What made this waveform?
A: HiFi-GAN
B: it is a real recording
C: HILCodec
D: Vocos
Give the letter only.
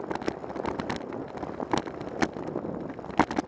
B